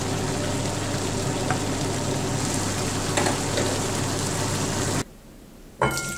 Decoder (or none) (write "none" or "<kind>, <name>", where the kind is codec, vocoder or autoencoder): none